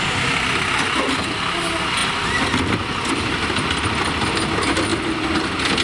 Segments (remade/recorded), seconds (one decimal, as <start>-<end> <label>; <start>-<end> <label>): 0.0-4.9 recorded; 4.9-5.8 remade